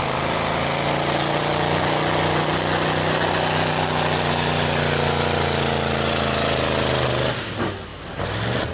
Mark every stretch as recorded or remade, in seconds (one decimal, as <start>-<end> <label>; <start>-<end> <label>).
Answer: 0.0-8.7 recorded